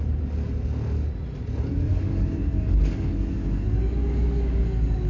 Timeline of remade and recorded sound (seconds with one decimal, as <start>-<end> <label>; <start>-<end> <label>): 0.0-1.9 recorded; 1.9-5.1 remade